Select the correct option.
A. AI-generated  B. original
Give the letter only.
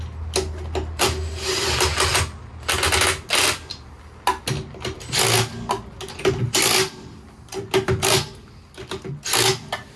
B